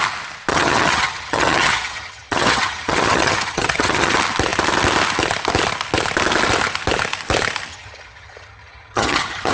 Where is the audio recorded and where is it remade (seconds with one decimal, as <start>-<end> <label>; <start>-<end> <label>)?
0.0-0.5 recorded; 0.5-4.1 remade; 4.1-7.7 recorded; 7.7-9.5 remade